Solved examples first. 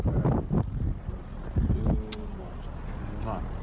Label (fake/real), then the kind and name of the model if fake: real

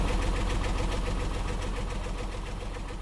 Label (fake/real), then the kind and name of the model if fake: real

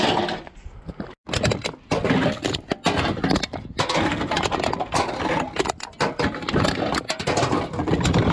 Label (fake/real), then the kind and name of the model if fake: real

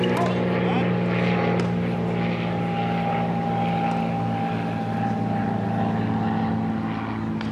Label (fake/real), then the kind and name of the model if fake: real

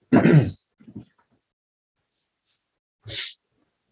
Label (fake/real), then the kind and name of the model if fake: real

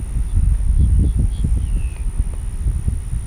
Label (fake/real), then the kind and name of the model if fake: real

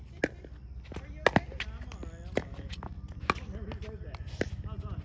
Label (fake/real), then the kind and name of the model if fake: real